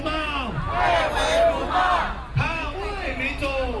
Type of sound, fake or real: real